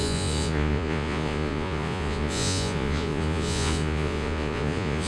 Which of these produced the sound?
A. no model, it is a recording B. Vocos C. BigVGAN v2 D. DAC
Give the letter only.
B